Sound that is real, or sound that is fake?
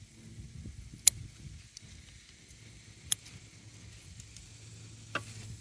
real